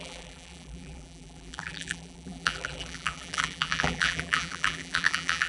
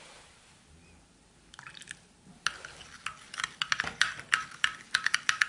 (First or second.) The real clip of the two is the second